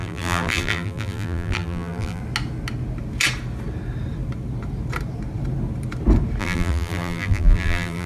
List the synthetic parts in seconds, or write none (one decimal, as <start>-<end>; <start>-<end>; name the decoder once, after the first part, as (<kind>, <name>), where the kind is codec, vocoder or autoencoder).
0.0-2.2 (vocoder, BigVGAN v2); 6.4-8.1